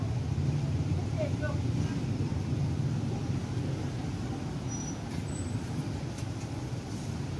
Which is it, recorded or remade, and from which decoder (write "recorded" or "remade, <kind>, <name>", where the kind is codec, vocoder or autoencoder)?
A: recorded